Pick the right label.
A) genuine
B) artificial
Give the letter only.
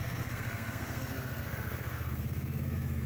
B